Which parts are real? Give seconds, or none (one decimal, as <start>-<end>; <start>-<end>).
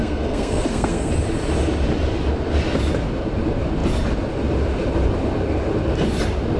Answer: 1.1-6.6